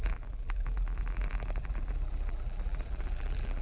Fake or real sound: fake